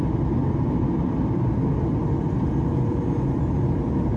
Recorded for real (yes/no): yes